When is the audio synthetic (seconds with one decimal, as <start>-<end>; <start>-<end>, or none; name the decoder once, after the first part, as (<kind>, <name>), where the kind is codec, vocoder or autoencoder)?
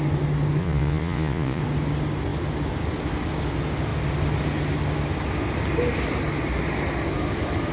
0.6-1.6 (vocoder, Vocos)